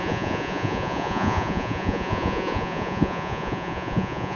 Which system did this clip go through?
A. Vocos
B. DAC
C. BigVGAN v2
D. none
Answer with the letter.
A